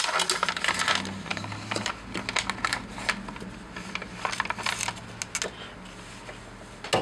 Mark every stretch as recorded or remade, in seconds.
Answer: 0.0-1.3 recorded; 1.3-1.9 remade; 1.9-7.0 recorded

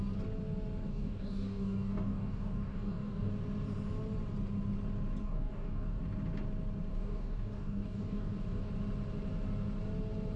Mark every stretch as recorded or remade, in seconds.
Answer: 0.0-0.9 recorded; 0.9-3.3 remade; 3.3-5.2 recorded; 5.2-6.0 remade; 6.0-6.9 recorded; 6.9-8.7 remade; 8.7-10.4 recorded

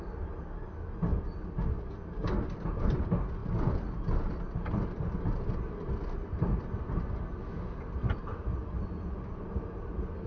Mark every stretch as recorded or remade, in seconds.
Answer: 0.0-10.3 recorded

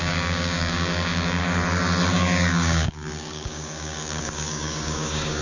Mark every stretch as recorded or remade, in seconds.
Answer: 0.0-1.4 remade; 1.4-2.1 recorded; 2.1-5.4 remade